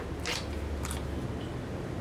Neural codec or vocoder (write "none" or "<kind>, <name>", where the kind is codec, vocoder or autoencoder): none